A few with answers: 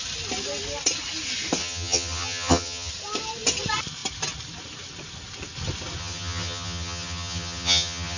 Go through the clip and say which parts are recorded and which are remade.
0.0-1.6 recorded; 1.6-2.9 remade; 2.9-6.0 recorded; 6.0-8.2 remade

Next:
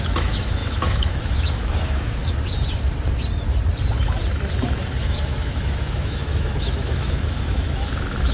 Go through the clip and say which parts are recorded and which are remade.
0.0-2.2 remade; 2.2-5.0 recorded; 5.0-8.3 remade